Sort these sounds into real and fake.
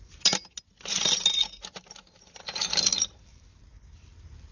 real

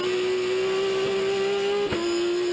real